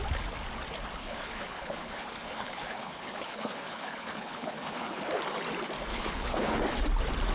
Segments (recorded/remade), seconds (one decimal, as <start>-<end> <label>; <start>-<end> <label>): 0.0-1.0 recorded; 1.0-5.2 remade; 5.2-5.9 recorded; 5.9-6.6 remade; 6.6-7.3 recorded